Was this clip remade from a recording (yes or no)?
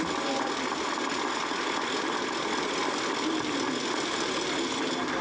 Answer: no